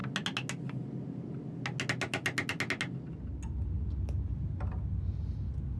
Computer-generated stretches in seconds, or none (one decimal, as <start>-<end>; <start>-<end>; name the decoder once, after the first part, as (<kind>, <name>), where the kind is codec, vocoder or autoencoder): none